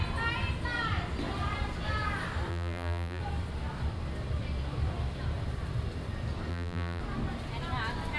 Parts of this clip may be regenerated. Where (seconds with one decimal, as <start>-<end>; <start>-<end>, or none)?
2.5-3.2; 6.5-7.0